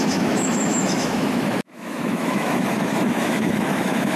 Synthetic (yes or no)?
yes